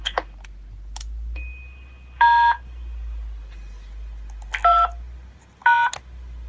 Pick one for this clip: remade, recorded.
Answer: recorded